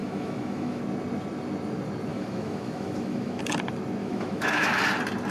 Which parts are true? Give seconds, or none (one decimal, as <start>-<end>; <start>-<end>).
0.8-2.1; 3.4-4.0; 4.8-5.3

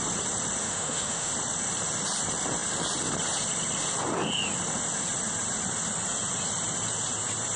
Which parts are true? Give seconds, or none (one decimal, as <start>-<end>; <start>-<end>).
0.0-0.6; 1.3-7.6

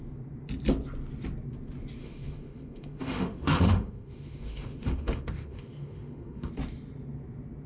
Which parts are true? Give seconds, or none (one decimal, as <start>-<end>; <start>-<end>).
0.0-2.0; 6.5-7.7